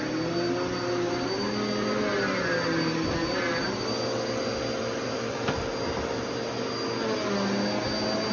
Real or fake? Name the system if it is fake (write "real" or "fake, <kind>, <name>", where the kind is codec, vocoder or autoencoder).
real